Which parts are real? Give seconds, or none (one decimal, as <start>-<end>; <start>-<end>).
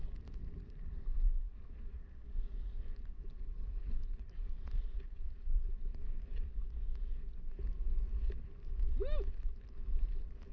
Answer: 0.0-0.4; 5.0-10.5